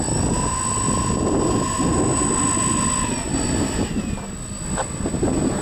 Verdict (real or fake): real